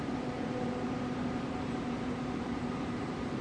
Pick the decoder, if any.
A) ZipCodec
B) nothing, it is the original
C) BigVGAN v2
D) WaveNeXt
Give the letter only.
C